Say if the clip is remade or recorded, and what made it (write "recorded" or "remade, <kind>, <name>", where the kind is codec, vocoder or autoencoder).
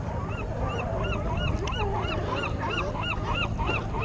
recorded